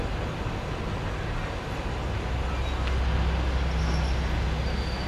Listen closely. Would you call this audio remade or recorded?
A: recorded